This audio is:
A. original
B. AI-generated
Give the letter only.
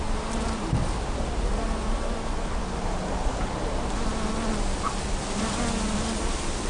A